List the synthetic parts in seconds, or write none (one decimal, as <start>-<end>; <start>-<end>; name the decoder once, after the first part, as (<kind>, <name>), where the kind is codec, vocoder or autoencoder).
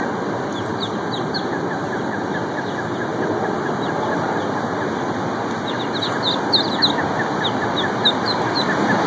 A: 0.7-2.6 (vocoder, BigVGAN v2)